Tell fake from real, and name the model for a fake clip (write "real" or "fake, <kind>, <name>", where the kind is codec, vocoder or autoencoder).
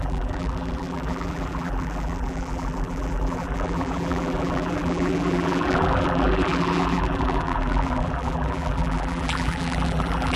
fake, vocoder, BigVGAN v2